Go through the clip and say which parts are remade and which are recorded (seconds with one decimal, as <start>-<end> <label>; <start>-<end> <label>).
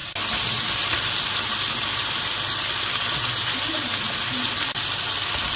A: 0.0-5.6 recorded